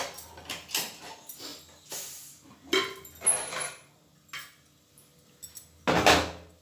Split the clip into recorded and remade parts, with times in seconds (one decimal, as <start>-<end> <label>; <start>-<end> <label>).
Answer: 0.0-6.6 recorded